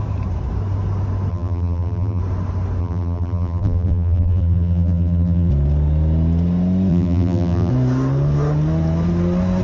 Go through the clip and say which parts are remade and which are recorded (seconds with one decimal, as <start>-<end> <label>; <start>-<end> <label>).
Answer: 0.0-1.3 recorded; 1.3-2.2 remade; 2.2-2.8 recorded; 2.8-5.5 remade; 5.5-6.9 recorded; 6.9-7.7 remade; 7.7-9.6 recorded